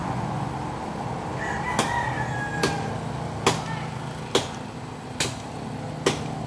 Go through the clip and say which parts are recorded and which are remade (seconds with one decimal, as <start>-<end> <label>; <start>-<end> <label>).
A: 0.0-0.5 remade; 0.5-6.5 recorded